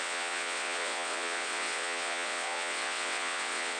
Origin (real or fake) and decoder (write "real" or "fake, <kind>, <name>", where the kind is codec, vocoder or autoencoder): fake, vocoder, WaveNeXt